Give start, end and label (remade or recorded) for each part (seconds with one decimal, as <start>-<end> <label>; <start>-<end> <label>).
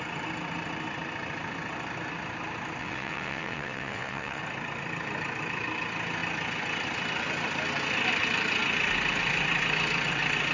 0.0-2.8 recorded; 2.8-4.4 remade; 4.4-10.5 recorded